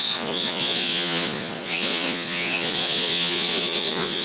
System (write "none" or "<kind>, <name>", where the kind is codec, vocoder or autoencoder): vocoder, Vocos